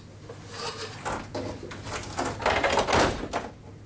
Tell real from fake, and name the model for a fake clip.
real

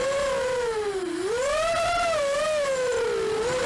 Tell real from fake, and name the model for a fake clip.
real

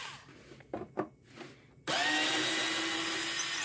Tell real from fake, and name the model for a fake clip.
real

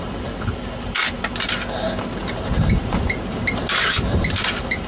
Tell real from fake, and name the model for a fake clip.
fake, vocoder, BigVGAN v2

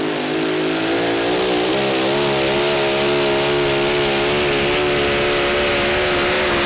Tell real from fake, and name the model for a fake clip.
real